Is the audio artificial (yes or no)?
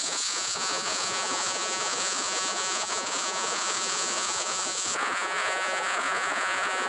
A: yes